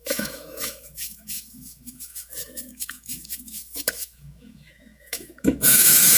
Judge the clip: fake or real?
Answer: fake